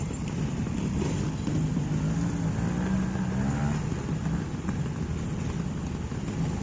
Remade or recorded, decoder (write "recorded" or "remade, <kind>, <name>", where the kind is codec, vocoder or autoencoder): recorded